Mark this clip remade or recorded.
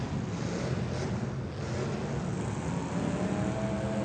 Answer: recorded